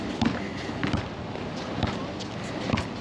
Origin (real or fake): real